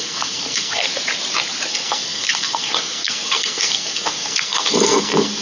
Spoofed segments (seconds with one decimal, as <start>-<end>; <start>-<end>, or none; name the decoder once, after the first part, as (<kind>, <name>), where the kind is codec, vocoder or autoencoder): 0.0-0.9 (codec, SNAC); 1.7-5.4